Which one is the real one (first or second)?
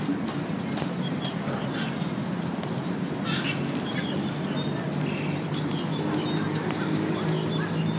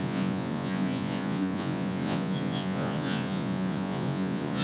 first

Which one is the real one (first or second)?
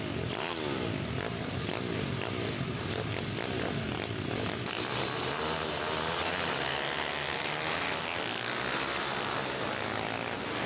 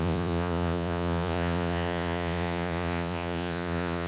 first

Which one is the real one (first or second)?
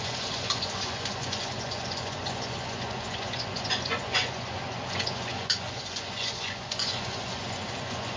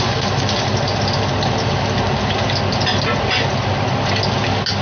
second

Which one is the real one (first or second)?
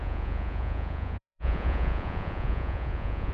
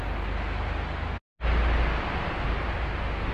second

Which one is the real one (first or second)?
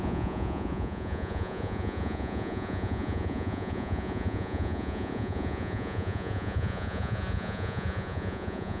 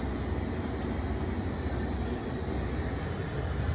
second